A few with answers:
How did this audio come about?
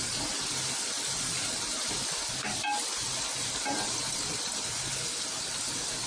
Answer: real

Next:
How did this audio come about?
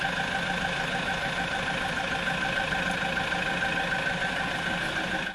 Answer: real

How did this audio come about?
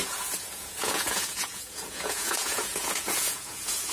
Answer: fake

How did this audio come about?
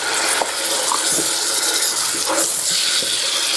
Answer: real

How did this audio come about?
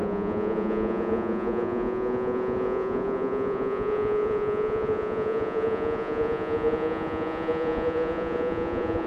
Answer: fake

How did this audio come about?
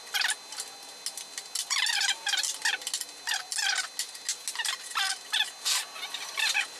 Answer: real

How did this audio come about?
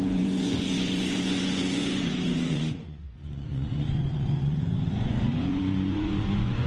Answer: fake